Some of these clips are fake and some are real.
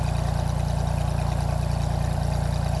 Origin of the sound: real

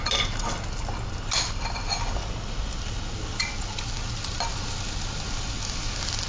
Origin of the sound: real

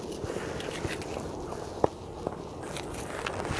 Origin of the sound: real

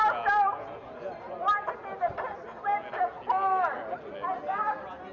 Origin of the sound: real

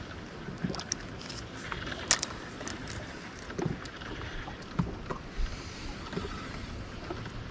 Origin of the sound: real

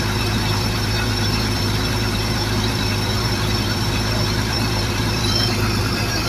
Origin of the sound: fake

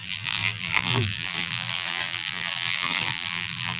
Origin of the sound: fake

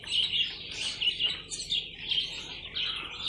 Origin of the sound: real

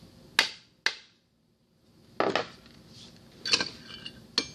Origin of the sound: real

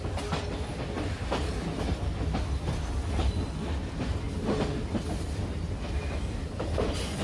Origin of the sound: real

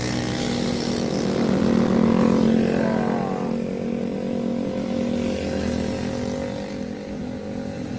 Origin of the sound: real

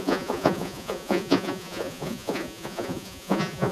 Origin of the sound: fake